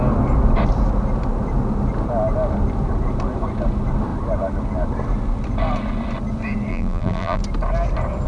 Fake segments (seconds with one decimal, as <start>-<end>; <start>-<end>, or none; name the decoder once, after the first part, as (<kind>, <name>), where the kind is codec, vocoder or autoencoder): 6.7-7.4 (vocoder, BigVGAN v2)